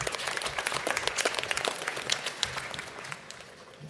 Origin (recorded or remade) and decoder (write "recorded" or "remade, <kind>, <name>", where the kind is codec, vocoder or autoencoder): remade, vocoder, Vocos